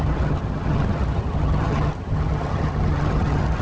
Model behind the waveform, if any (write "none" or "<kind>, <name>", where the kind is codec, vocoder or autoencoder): vocoder, HiFi-GAN